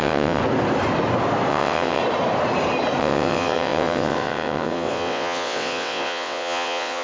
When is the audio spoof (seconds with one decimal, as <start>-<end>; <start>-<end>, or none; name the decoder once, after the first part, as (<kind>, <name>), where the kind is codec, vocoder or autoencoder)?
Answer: 0.0-0.4 (vocoder, WaveNeXt); 1.5-2.0; 3.0-7.0